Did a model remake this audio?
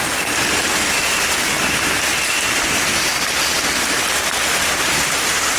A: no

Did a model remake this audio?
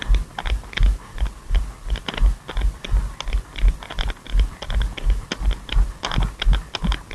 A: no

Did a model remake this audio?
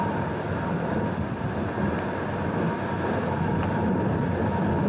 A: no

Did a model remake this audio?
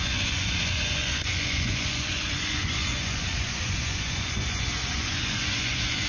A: yes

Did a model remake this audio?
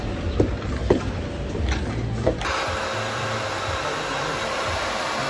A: no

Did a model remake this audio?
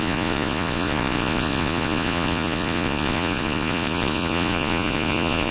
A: yes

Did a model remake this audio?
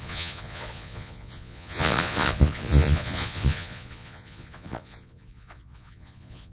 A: yes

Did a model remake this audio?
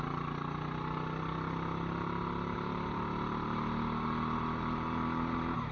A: no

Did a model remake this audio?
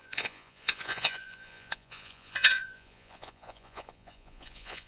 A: yes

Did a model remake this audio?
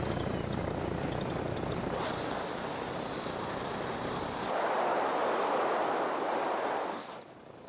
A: no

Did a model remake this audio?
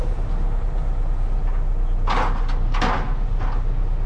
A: no